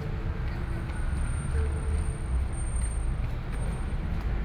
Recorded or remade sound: recorded